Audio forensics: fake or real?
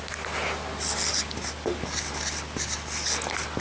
real